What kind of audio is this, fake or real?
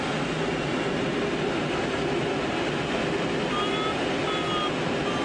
real